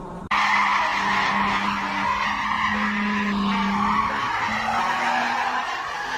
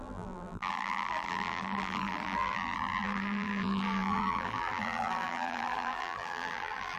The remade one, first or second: second